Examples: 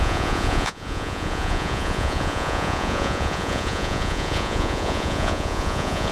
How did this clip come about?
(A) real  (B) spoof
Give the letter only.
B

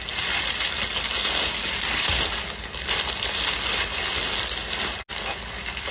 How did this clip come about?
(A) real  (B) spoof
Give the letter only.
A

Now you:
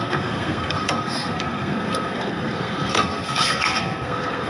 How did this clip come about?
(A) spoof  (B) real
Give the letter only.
A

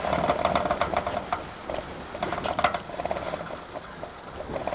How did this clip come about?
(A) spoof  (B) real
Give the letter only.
B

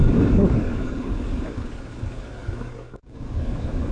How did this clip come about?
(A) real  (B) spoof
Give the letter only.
B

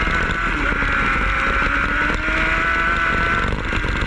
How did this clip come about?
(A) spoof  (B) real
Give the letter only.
B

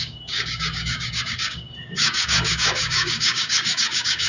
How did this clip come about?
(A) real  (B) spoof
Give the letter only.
B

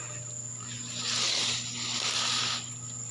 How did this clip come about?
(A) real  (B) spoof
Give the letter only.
A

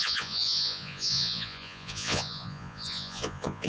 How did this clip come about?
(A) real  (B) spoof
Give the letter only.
B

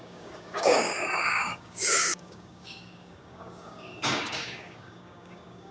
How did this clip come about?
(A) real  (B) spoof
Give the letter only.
B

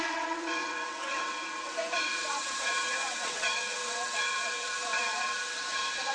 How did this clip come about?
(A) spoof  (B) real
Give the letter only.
A